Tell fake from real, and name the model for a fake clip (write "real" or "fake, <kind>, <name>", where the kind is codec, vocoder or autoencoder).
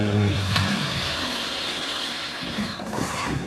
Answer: fake, codec, SNAC